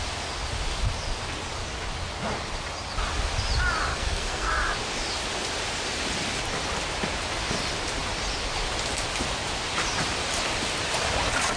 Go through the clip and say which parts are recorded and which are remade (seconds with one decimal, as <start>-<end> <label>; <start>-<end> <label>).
0.0-3.9 recorded; 3.9-4.5 remade; 4.5-11.6 recorded